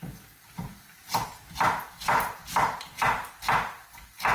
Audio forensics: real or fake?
real